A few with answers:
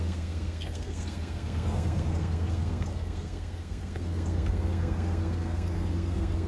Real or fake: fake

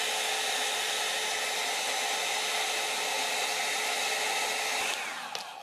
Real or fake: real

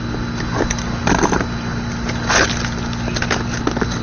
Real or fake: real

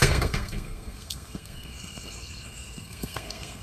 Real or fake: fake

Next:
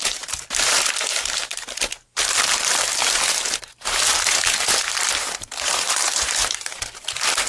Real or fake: fake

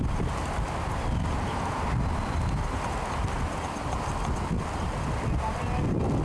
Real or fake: real